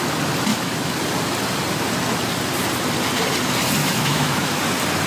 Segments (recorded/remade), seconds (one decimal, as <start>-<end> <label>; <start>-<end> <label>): 0.0-0.5 recorded; 0.5-1.0 remade; 1.0-3.8 recorded; 3.8-4.6 remade; 4.6-5.1 recorded